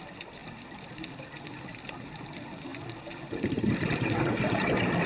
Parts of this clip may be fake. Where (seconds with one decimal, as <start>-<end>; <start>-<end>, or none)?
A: 0.0-5.1